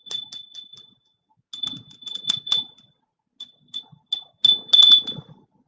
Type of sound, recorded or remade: recorded